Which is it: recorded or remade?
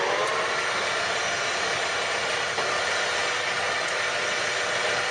recorded